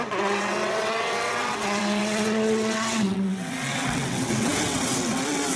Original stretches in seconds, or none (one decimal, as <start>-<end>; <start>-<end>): none